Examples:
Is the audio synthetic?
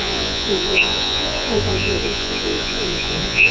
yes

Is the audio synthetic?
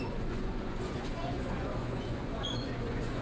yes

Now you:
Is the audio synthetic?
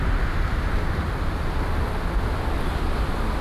no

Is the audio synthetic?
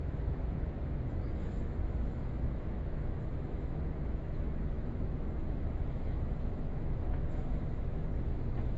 yes